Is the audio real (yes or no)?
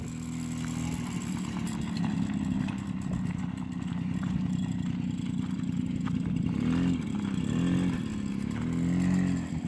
yes